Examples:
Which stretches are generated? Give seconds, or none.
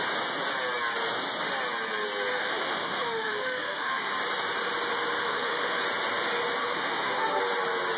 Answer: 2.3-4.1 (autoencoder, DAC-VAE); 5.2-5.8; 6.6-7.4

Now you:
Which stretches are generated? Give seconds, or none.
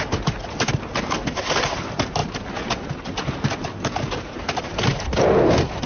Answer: none